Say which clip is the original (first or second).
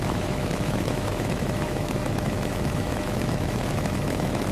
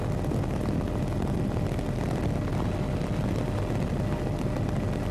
second